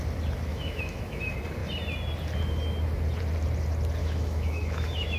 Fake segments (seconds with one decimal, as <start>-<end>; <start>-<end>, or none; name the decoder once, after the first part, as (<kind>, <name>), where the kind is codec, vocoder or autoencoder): 0.5-1.2 (autoencoder, DAC-VAE); 4.0-5.2